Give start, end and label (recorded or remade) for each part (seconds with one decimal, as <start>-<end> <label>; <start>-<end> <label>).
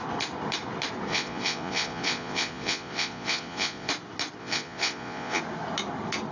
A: 0.0-1.1 recorded; 1.1-3.9 remade; 3.9-4.4 recorded; 4.4-5.4 remade; 5.4-6.3 recorded